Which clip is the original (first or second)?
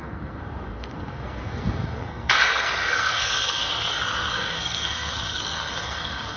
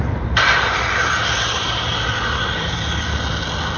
second